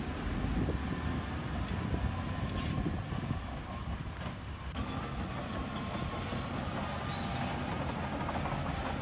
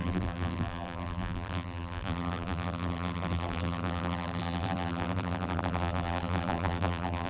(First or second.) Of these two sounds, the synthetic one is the second